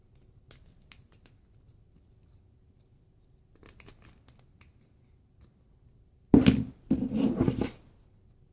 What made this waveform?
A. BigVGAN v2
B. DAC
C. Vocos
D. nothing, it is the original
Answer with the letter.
D